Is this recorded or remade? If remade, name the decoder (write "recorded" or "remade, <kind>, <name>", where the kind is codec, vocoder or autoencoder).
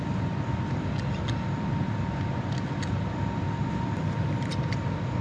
recorded